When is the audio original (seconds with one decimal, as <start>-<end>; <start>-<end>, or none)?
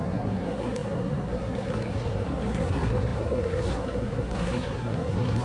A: none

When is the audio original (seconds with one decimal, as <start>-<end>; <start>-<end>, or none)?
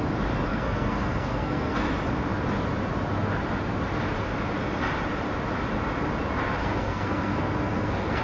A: 0.0-0.5; 1.9-6.6